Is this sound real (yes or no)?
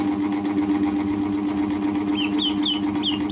yes